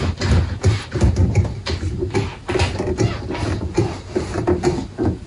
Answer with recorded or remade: recorded